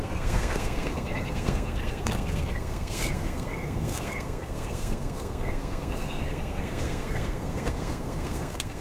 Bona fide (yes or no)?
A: no